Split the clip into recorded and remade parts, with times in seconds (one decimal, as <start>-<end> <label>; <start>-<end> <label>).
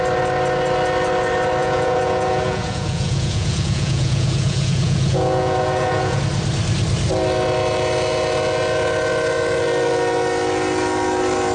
0.0-1.6 recorded; 1.6-6.2 remade; 6.2-11.5 recorded